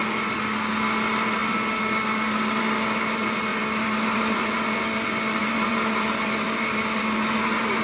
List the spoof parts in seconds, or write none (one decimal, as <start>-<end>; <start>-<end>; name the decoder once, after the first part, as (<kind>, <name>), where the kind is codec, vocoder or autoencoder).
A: 3.5-4.8 (vocoder, BigVGAN v2); 5.4-7.0